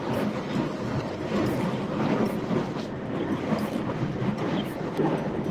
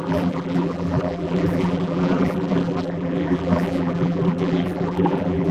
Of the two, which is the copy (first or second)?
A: second